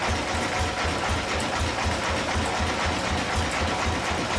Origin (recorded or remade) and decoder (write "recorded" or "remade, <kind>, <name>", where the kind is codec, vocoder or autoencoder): recorded